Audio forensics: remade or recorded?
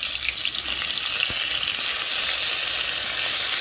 recorded